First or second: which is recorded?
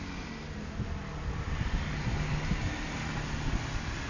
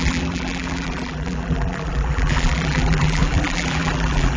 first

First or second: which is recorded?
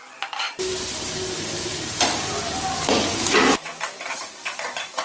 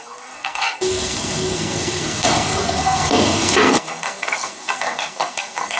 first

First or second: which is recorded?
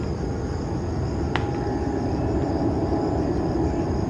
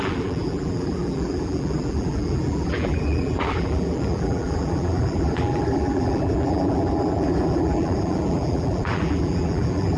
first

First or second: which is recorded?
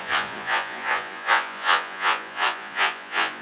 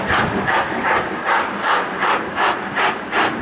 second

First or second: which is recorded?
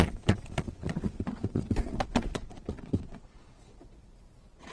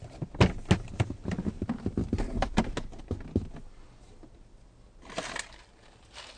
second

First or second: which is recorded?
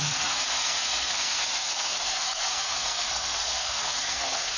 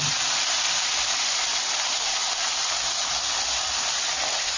second